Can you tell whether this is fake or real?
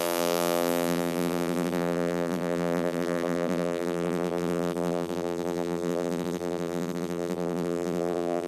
fake